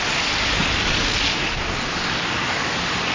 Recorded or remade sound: recorded